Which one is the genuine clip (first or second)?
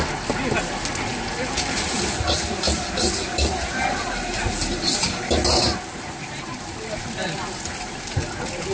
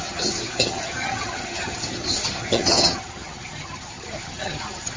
first